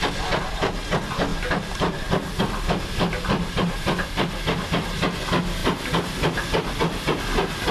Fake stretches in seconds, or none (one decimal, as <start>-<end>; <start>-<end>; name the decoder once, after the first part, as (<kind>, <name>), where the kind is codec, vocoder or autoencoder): none